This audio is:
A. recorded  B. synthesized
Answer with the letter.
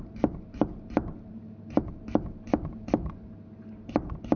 B